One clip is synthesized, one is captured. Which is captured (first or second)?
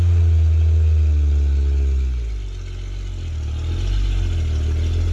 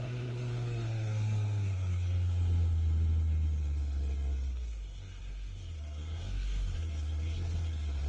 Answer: first